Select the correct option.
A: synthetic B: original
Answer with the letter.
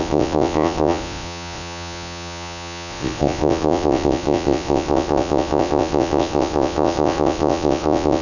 A